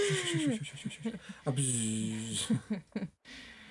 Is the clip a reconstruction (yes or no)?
no